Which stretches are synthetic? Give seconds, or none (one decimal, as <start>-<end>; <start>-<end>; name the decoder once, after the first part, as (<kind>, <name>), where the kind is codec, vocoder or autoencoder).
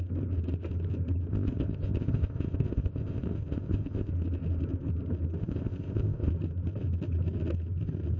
1.3-4.1 (codec, ZipCodec); 5.4-6.3